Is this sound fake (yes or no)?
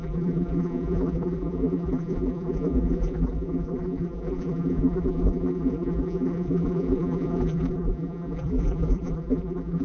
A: yes